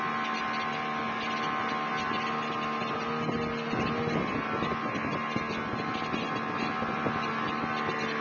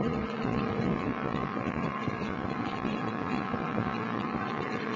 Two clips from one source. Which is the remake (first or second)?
second